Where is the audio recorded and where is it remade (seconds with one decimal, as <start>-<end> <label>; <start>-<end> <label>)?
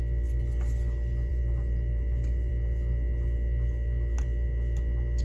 0.0-1.3 recorded; 1.3-2.5 remade; 2.5-5.2 recorded